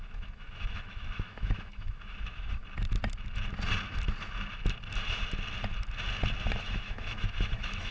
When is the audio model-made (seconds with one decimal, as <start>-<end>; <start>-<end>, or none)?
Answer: 0.0-2.6; 6.6-7.9